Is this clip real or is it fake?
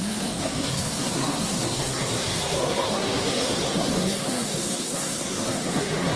fake